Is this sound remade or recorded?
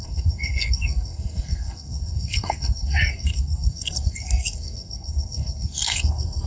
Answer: remade